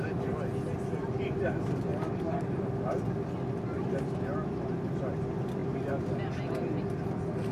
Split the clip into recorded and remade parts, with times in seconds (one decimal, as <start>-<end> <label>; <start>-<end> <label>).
0.0-7.5 recorded